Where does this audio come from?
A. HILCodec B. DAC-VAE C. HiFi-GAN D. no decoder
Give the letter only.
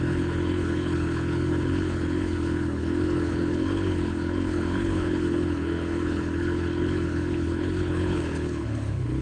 A